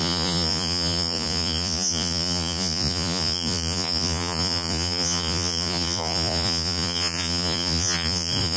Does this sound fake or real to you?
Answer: fake